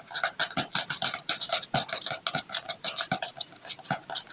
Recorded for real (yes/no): yes